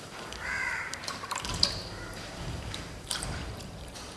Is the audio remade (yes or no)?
yes